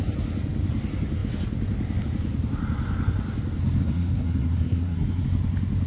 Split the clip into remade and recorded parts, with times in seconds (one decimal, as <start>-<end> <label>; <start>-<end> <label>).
0.0-3.8 recorded; 3.8-5.2 remade; 5.2-5.9 recorded